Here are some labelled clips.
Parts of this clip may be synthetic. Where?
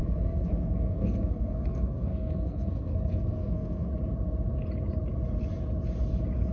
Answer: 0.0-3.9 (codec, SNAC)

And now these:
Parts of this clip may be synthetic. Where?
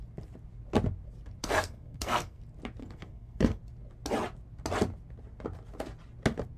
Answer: 1.4-2.4 (codec, SNAC); 2.8-3.6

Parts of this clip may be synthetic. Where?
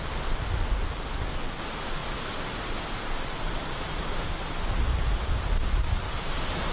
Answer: none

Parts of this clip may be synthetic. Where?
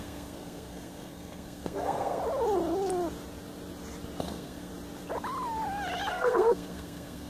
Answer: 0.0-2.2 (codec, SNAC); 4.2-4.7; 6.1-7.3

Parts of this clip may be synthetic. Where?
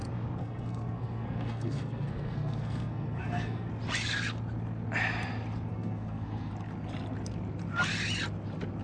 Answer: 0.4-3.7 (codec, SNAC); 5.7-6.5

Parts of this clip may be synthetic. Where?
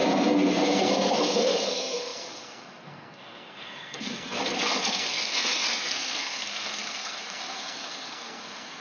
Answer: 0.0-8.8 (codec, SNAC)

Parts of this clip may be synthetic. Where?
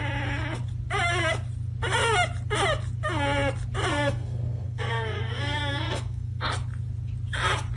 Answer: 3.9-6.4 (codec, SNAC)